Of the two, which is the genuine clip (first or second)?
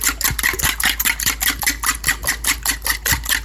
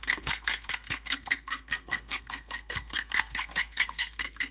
first